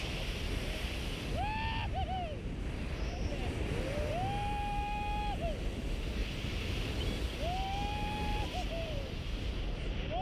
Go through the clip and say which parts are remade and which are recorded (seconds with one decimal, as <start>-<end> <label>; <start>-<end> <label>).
0.0-6.2 recorded; 6.2-7.0 remade; 7.0-8.3 recorded; 8.3-9.5 remade; 9.5-10.2 recorded